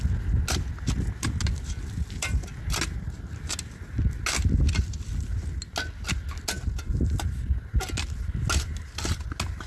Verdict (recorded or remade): recorded